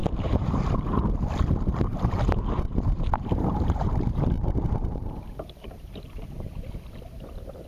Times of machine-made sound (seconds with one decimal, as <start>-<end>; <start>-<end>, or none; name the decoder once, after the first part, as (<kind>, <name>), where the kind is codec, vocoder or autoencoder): 0.0-1.0 (vocoder, BigVGAN v2); 1.9-6.5